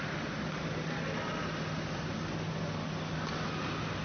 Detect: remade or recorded recorded